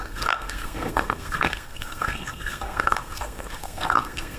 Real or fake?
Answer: fake